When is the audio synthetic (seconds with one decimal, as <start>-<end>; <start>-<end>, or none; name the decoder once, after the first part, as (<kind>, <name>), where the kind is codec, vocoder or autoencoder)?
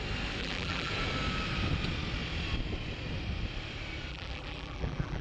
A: 0.4-0.9 (vocoder, BigVGAN v2); 4.1-5.2